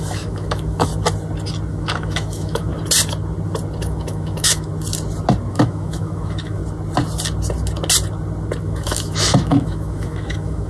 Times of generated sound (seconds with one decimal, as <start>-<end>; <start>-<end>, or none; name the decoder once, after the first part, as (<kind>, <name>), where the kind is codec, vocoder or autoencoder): 0.0-0.9 (autoencoder, DAC-VAE); 1.7-2.7; 3.8-4.7; 5.5-6.6; 8.6-10.7